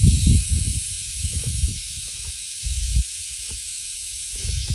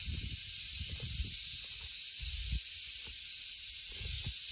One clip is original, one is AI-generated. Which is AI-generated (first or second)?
first